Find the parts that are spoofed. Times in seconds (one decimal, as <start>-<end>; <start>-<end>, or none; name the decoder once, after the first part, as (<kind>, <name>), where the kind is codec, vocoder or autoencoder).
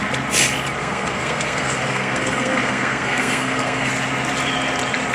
0.8-3.9 (codec, SNAC)